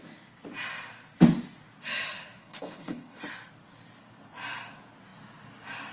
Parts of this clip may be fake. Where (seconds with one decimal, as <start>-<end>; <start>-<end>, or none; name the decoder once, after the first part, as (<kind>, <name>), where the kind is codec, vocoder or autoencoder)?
2.4-3.2 (codec, HILCodec)